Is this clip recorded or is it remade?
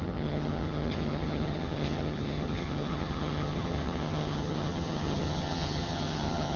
remade